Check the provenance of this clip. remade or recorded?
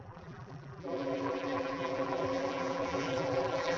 remade